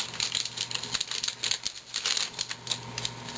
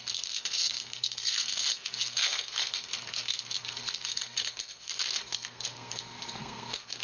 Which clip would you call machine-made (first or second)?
second